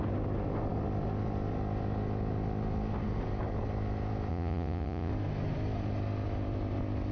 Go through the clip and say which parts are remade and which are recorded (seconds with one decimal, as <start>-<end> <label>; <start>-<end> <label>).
0.0-4.3 recorded; 4.3-5.1 remade; 5.1-7.1 recorded